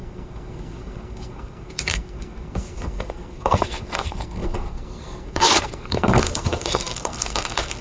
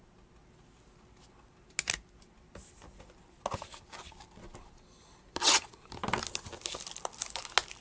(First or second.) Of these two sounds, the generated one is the first